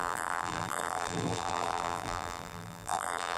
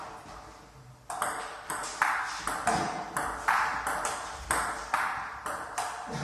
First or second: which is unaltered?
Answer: second